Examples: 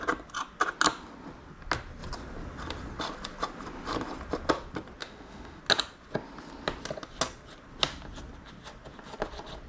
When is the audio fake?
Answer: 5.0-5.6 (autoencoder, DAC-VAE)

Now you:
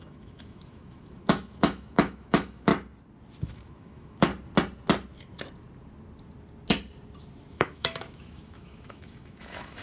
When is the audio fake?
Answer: 0.0-2.7 (autoencoder, DAC-VAE); 3.4-4.3; 7.5-9.8